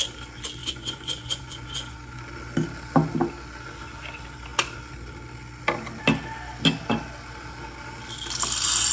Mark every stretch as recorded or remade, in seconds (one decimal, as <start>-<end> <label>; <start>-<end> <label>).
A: 0.0-0.6 recorded; 0.6-2.2 remade; 2.2-8.9 recorded